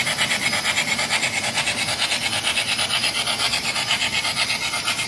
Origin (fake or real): real